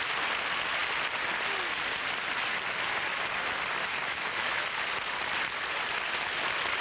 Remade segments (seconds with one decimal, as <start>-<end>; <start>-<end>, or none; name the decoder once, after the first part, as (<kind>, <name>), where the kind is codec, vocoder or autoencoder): 4.0-4.6 (autoencoder, DAC-VAE)